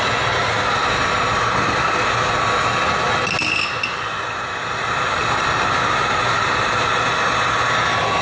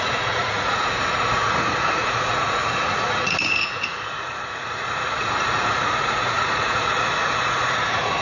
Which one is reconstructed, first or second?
second